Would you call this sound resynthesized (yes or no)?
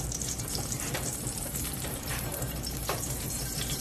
yes